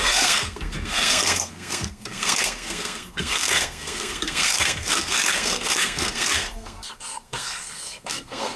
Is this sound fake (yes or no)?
yes